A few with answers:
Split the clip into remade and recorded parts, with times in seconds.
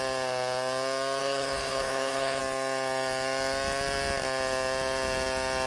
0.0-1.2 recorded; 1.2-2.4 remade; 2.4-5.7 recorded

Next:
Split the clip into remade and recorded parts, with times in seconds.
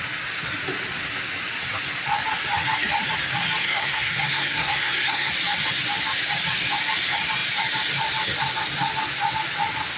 0.0-3.6 recorded; 3.6-5.3 remade; 5.3-10.0 recorded